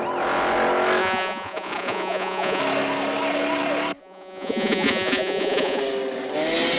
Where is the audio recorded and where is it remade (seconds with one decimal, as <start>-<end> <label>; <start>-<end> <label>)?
0.0-1.0 recorded; 1.0-2.6 remade; 2.6-4.0 recorded; 4.0-5.8 remade; 5.8-6.8 recorded